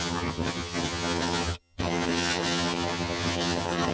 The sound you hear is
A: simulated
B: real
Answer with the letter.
A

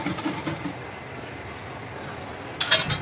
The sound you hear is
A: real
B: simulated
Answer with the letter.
A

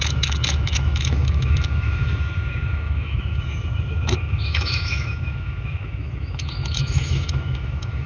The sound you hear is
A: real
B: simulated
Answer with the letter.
B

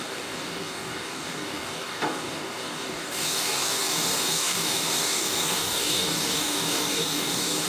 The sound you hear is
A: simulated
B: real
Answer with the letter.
A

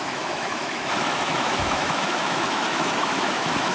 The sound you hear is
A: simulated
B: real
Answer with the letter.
A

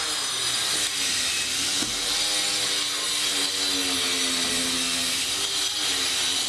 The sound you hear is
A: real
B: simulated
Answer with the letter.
A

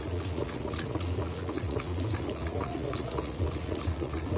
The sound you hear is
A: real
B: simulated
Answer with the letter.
B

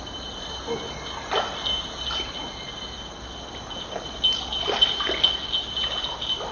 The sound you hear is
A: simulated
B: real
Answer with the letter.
B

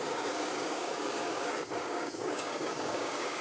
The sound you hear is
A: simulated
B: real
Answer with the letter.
A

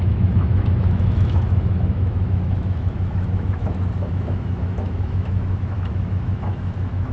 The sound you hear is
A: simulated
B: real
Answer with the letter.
A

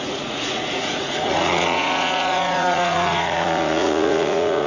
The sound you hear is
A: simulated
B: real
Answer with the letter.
A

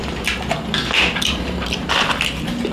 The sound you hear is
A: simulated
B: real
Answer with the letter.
B